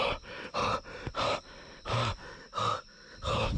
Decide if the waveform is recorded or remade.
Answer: recorded